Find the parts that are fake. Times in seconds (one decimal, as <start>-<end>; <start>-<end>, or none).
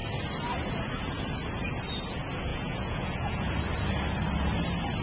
2.5-3.5